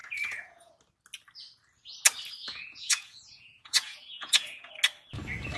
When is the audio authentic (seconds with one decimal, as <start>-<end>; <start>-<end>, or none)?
0.7-2.4; 4.7-5.6